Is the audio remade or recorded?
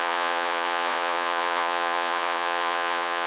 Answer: remade